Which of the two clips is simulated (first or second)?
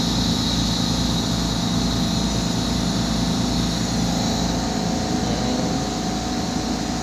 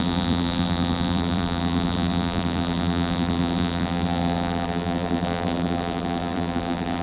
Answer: second